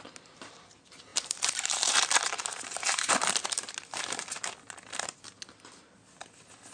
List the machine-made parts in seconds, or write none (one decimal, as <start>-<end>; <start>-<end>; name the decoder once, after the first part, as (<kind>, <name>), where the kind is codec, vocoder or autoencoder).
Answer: 1.1-3.1 (vocoder, BigVGAN v2)